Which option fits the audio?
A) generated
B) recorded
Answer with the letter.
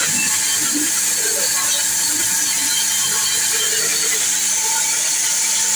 B